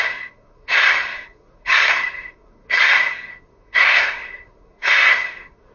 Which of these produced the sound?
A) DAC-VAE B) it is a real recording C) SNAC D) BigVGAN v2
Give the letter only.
C